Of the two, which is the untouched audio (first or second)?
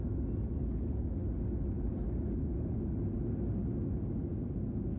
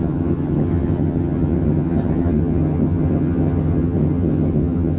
first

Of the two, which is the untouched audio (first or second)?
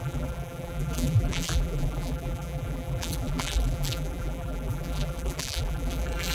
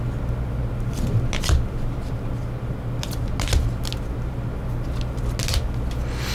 second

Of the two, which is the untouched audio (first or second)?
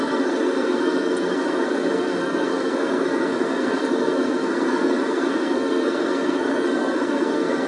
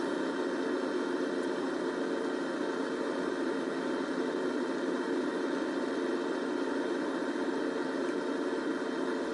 second